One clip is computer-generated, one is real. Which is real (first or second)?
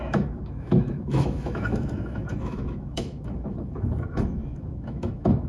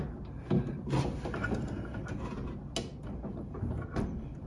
second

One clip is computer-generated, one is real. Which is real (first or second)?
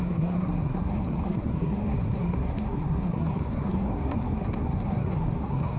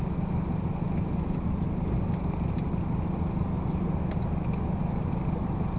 second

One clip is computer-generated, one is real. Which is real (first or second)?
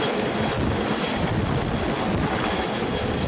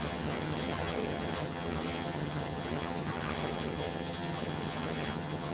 first